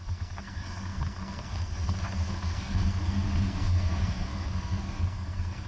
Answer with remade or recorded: remade